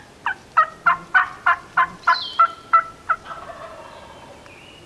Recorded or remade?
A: recorded